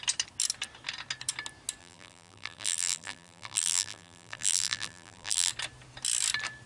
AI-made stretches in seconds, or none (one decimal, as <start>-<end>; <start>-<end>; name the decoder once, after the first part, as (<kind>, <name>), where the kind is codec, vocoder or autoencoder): 1.8-5.5 (vocoder, BigVGAN v2)